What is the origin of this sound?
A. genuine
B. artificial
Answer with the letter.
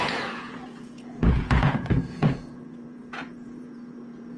B